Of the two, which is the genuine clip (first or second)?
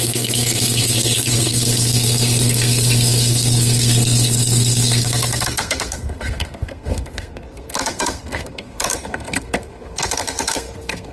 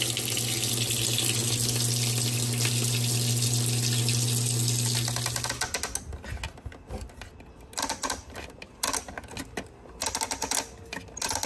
second